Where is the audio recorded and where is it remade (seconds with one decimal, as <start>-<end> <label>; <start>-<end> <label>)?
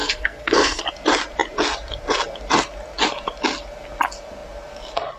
0.0-0.8 remade; 0.8-5.2 recorded